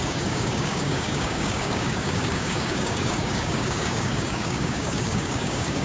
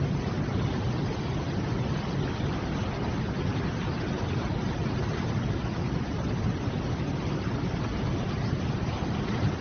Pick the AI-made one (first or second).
first